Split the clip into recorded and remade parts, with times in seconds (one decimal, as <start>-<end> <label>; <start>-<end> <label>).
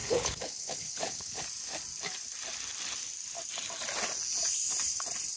0.0-1.4 remade; 1.4-5.4 recorded